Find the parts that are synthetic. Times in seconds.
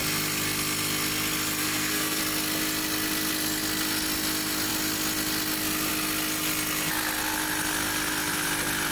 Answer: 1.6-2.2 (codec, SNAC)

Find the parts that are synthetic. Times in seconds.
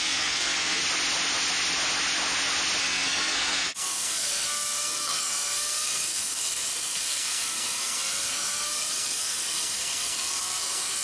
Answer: 0.0-0.8 (codec, SNAC); 2.8-11.0